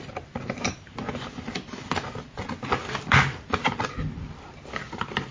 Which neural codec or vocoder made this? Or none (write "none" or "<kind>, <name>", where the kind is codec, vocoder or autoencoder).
none